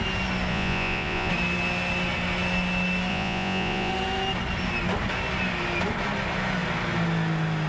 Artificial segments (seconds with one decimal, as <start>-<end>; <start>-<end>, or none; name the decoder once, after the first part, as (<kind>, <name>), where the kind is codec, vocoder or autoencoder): 0.5-1.3 (vocoder, Vocos); 3.1-3.9